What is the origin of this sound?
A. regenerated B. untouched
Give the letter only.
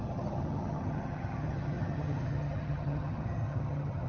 A